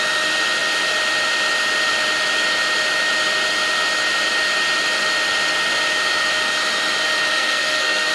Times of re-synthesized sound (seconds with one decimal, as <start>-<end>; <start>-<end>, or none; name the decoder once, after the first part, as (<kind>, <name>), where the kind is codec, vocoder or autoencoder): 7.3-8.1 (codec, SNAC)